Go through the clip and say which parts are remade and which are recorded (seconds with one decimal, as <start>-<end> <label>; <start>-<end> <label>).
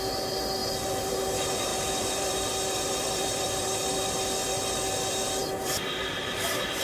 0.0-1.7 recorded; 1.7-3.6 remade; 3.6-5.4 recorded; 5.4-6.8 remade